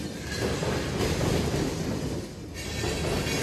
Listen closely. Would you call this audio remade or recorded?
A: recorded